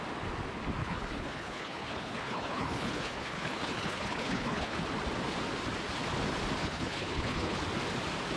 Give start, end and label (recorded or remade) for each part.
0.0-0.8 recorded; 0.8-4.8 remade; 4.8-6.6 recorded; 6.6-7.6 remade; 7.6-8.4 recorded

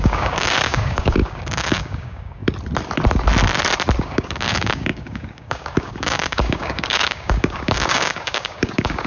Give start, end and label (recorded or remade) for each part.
0.0-2.4 remade; 2.4-4.0 recorded; 4.0-9.1 remade

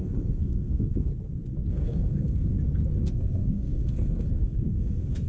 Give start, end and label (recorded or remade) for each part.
0.0-1.1 remade; 1.1-1.7 recorded; 1.7-2.5 remade; 2.5-3.1 recorded; 3.1-5.3 remade

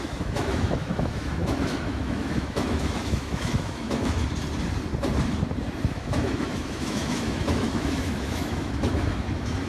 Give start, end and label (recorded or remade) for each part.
0.0-4.2 remade; 4.2-5.9 recorded; 5.9-9.7 remade

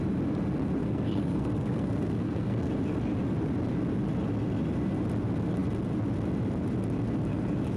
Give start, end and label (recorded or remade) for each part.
0.0-0.8 recorded; 0.8-2.7 remade; 2.7-7.8 recorded

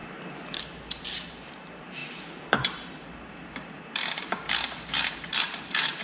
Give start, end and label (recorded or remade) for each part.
0.0-6.0 remade

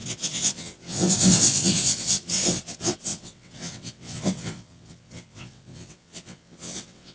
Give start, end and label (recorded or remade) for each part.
0.0-7.1 remade